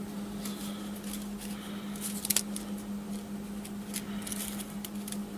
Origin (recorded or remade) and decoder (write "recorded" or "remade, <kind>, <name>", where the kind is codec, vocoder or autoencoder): recorded